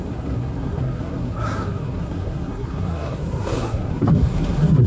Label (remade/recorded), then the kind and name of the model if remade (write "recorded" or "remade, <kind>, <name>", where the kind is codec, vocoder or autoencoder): remade, codec, SNAC